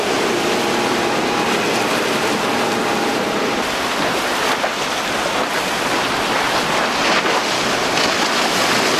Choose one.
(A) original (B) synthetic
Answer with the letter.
A